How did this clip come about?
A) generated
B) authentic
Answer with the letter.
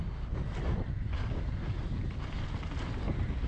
B